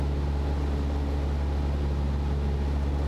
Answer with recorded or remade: recorded